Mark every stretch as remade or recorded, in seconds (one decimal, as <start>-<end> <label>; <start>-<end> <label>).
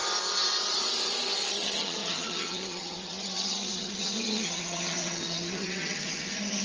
0.0-1.5 recorded; 1.5-6.6 remade